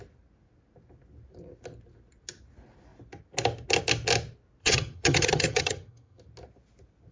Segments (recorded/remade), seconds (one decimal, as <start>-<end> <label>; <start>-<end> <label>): 0.0-4.6 recorded; 4.6-6.2 remade; 6.2-7.1 recorded